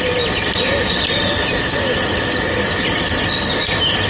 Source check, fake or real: real